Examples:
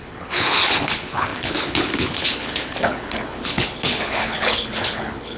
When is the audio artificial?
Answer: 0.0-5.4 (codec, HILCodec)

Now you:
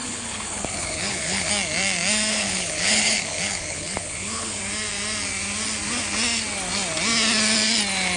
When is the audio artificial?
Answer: 0.0-1.5 (codec, HILCodec); 2.3-4.6

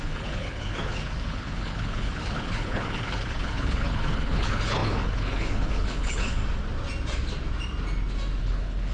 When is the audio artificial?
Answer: 0.0-6.4 (codec, HILCodec); 8.4-8.9

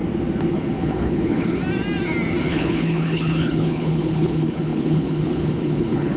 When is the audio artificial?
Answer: 0.5-1.6 (codec, HILCodec); 2.4-6.2

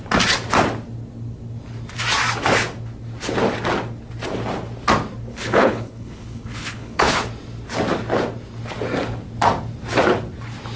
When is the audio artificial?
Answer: 5.3-7.2 (codec, HILCodec)

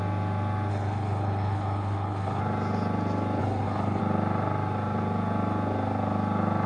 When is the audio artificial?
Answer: 0.7-2.4 (codec, HILCodec); 3.4-4.0

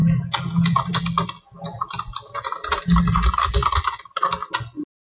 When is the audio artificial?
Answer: none

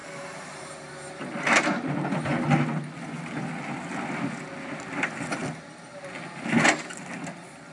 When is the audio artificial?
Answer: none